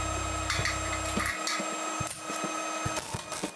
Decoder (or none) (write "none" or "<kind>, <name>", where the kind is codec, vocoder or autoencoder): none